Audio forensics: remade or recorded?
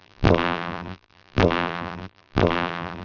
remade